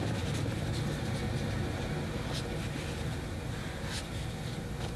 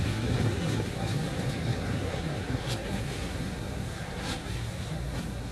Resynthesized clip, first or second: second